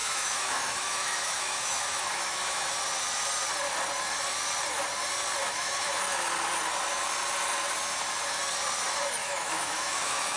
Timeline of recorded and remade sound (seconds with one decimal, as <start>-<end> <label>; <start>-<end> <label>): 0.0-2.7 remade; 2.7-5.4 recorded; 5.4-6.0 remade; 6.0-9.2 recorded; 9.2-10.4 remade